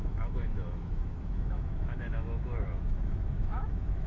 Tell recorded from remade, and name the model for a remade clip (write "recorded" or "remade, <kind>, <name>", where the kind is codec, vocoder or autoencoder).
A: remade, autoencoder, DAC-VAE